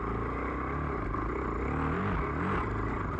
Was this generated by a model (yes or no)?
no